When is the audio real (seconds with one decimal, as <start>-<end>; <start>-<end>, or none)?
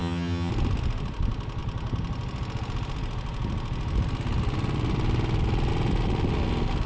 0.5-6.9